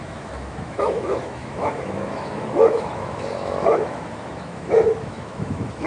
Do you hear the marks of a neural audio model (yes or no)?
yes